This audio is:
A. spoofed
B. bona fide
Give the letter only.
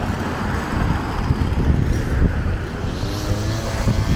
B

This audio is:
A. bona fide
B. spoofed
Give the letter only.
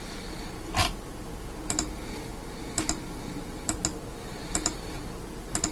A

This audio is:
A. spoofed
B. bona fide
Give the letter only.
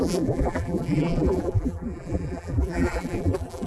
A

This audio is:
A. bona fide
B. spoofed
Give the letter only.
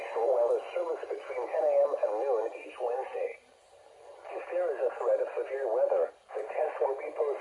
A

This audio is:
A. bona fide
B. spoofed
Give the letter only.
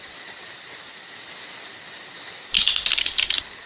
A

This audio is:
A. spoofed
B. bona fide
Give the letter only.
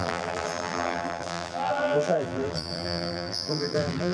A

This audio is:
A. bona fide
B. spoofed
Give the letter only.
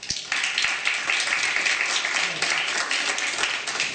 A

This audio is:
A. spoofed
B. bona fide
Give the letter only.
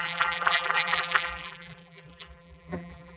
A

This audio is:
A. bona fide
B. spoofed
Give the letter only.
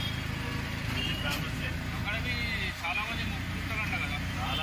A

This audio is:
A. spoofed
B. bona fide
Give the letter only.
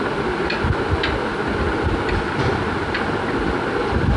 B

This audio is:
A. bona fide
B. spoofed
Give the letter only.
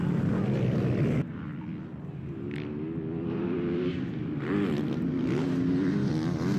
A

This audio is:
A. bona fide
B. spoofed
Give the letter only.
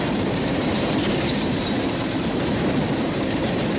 B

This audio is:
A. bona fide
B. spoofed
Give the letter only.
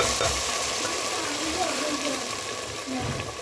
B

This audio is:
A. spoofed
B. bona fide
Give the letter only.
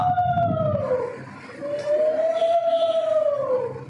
B